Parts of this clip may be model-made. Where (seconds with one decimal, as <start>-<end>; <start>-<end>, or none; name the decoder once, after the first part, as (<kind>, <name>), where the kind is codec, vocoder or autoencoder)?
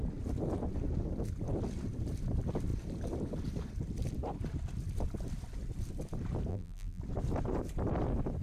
6.5-7.0 (vocoder, BigVGAN v2)